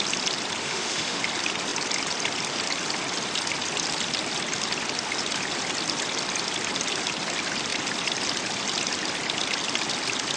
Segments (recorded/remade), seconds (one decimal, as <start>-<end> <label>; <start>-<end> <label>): 0.0-0.6 recorded; 0.6-1.2 remade; 1.2-10.4 recorded